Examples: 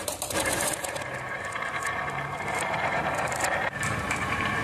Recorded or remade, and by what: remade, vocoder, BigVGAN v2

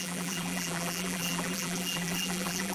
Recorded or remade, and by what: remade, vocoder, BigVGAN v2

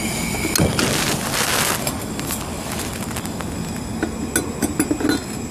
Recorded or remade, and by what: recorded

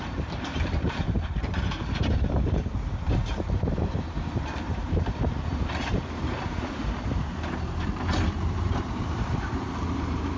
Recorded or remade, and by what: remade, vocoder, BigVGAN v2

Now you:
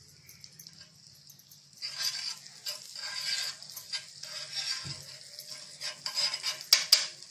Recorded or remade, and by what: recorded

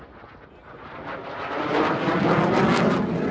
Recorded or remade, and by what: recorded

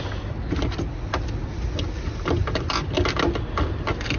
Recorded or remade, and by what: recorded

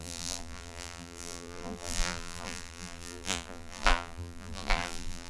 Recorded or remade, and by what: remade, vocoder, BigVGAN v2